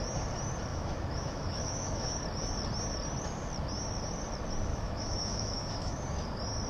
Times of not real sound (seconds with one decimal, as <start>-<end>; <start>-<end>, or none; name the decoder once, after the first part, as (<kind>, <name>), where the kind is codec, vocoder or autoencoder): 0.7-2.2 (autoencoder, DAC-VAE); 4.7-6.0